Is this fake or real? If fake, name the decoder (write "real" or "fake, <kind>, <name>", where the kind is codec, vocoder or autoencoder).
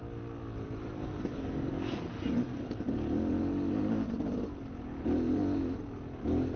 real